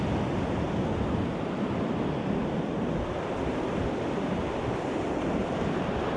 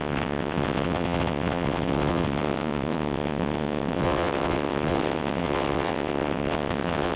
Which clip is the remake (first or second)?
second